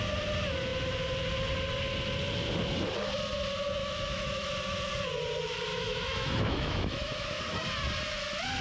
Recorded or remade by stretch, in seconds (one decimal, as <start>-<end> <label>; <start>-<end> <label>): 0.0-3.8 recorded; 3.8-4.5 remade; 4.5-5.7 recorded; 5.7-7.4 remade; 7.4-8.6 recorded